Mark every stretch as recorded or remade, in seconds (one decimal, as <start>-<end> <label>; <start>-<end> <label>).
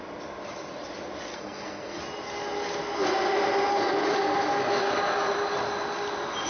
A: 0.0-1.3 recorded; 1.3-2.0 remade; 2.0-6.5 recorded